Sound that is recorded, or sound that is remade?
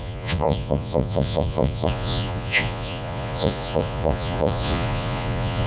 remade